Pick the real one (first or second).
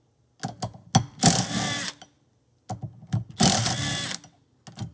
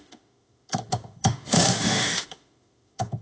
first